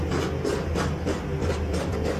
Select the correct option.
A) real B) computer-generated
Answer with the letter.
A